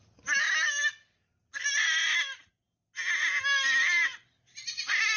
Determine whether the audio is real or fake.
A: real